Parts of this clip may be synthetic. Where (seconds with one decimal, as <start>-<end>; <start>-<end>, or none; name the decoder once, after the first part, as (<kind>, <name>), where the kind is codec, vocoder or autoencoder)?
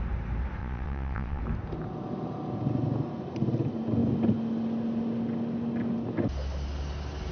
0.6-1.4 (vocoder, WaveNeXt)